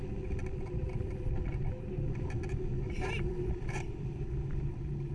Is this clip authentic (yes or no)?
yes